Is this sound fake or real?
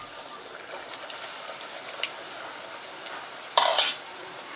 fake